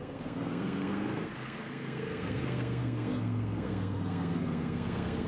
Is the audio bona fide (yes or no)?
no